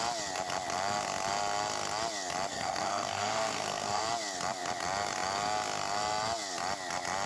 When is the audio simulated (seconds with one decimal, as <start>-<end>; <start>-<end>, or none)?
2.5-4.0